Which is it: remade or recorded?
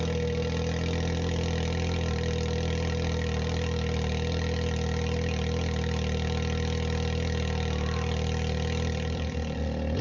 recorded